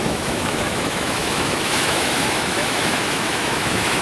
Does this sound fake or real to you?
fake